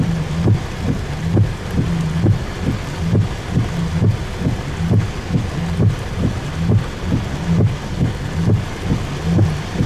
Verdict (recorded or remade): recorded